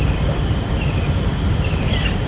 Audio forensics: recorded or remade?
remade